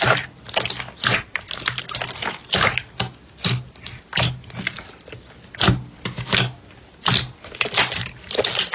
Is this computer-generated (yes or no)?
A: no